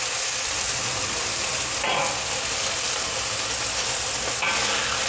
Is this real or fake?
real